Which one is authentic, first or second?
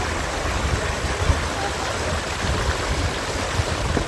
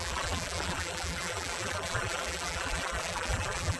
first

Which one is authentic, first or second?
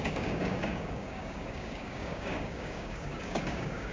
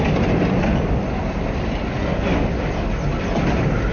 second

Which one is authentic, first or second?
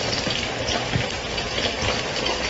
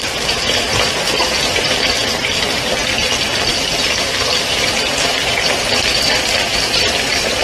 first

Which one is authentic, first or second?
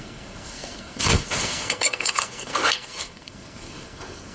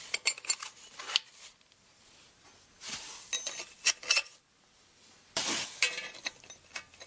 second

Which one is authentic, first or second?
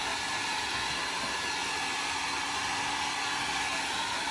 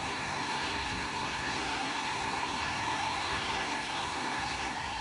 first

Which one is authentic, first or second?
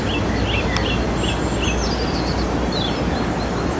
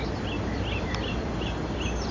first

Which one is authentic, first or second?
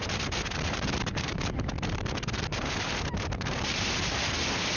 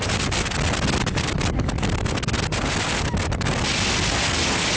second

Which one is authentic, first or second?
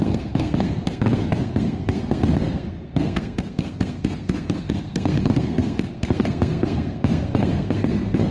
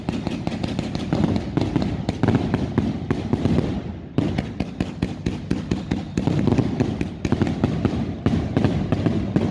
second